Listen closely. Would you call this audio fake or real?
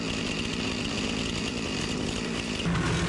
real